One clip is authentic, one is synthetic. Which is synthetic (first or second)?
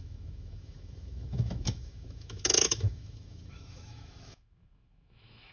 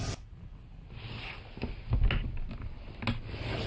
first